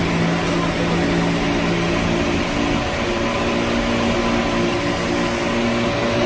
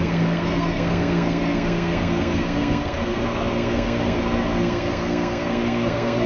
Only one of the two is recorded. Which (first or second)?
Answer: first